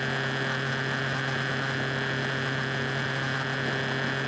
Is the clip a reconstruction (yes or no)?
no